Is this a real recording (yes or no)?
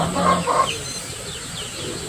yes